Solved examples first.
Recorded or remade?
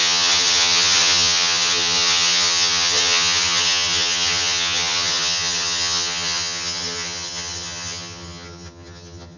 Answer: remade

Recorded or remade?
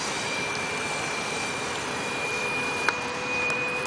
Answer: remade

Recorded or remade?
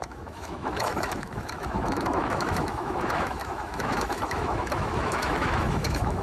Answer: remade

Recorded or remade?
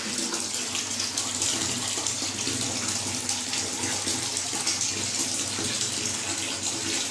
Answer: recorded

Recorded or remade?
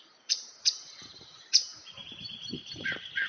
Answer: remade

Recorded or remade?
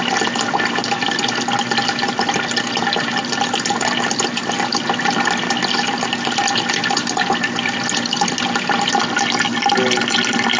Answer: recorded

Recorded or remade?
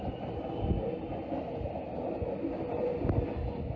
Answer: recorded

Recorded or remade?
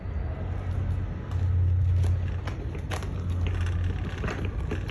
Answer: recorded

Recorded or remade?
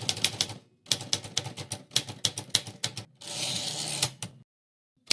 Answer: recorded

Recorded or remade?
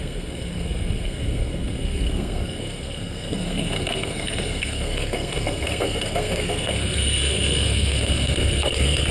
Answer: remade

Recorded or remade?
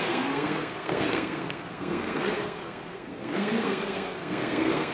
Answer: remade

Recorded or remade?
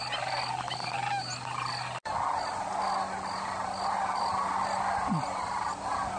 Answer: recorded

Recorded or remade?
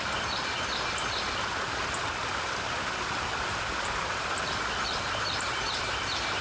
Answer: recorded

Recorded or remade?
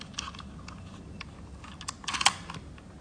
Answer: recorded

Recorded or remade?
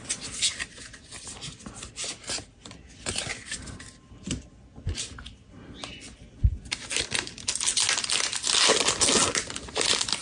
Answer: recorded